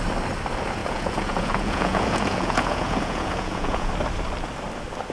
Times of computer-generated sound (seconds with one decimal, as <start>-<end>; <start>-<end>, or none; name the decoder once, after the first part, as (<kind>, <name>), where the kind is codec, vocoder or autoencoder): 0.8-3.9 (vocoder, Vocos)